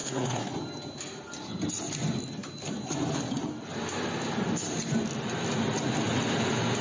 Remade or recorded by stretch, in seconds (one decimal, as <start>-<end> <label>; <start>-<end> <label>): 0.0-0.5 remade; 0.5-6.8 recorded